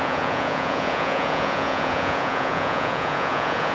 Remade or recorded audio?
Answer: remade